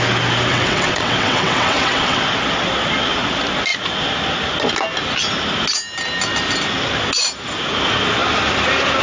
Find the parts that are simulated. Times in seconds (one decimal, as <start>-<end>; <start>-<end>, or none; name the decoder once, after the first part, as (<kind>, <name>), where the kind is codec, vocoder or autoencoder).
0.5-2.2 (vocoder, WaveNeXt)